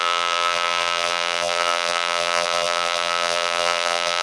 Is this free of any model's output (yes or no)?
no